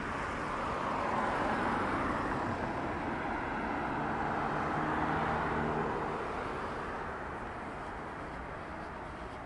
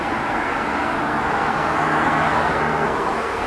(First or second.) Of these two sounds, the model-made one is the second